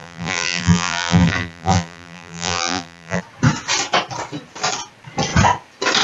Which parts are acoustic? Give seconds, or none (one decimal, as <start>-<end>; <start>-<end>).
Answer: 3.2-6.0